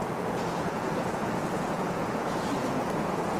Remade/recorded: remade